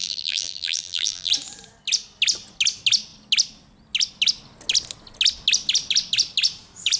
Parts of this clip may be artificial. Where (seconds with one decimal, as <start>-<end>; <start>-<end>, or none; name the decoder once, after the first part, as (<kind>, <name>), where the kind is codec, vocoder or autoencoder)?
0.0-1.3 (vocoder, BigVGAN v2)